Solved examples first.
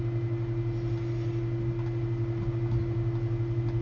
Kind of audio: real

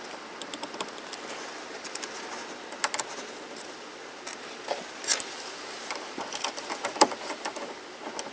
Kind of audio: real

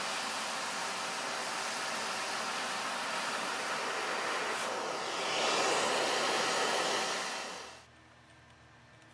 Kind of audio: real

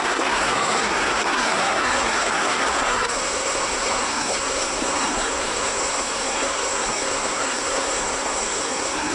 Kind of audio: fake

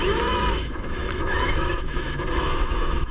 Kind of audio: fake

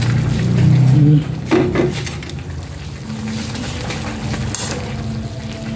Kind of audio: real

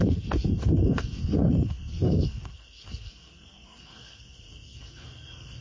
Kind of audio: fake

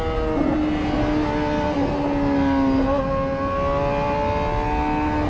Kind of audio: real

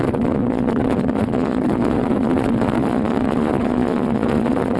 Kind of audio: fake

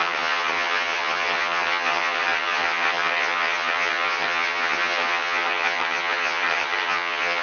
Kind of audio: fake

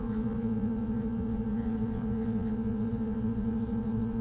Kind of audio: fake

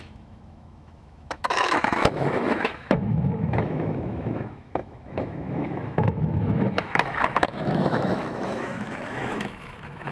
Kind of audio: fake